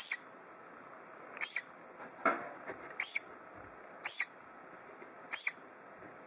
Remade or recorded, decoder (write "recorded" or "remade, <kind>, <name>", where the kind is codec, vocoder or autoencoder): recorded